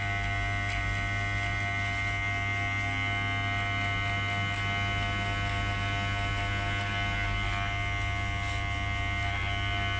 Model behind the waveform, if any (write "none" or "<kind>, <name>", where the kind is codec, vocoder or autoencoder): none